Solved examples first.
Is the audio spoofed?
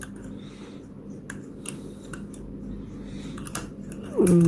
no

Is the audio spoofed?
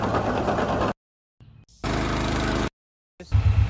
no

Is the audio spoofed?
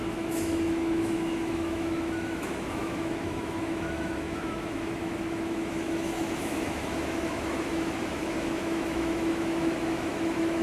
yes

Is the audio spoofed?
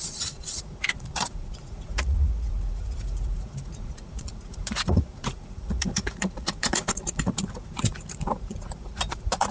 yes